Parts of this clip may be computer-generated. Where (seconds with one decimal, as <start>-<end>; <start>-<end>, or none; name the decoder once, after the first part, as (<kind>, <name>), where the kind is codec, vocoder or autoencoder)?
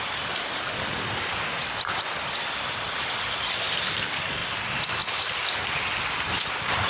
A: 0.0-4.4 (vocoder, BigVGAN v2); 6.4-6.9